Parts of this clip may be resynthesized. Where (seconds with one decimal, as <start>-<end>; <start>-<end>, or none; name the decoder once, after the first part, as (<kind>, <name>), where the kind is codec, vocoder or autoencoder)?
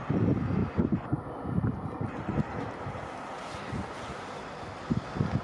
none